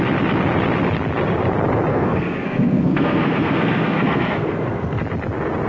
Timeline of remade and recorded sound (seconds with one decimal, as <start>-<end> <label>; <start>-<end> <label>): 0.0-1.9 recorded; 1.9-5.0 remade; 5.0-5.7 recorded